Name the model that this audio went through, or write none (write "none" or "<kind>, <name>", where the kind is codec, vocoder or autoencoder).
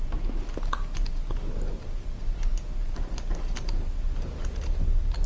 none